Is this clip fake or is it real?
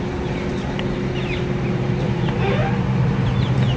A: real